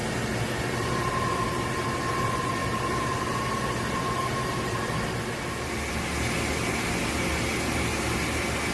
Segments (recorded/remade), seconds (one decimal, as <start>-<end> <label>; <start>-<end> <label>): 0.0-8.7 recorded